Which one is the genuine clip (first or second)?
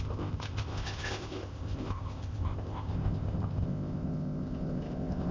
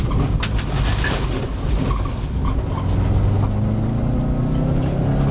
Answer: second